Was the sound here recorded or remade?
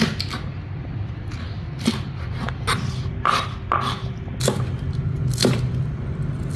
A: recorded